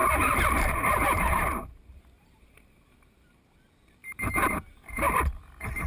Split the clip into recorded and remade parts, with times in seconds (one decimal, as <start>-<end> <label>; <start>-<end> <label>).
0.0-3.4 remade; 3.4-4.0 recorded; 4.0-5.1 remade; 5.1-5.9 recorded